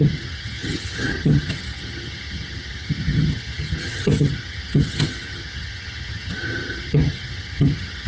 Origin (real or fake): fake